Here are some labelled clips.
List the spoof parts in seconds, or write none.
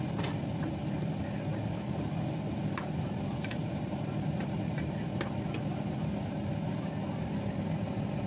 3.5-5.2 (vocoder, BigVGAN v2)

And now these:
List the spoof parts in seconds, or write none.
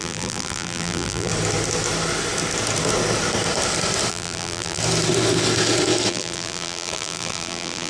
0.0-1.3 (vocoder, BigVGAN v2); 4.1-4.8; 6.1-7.9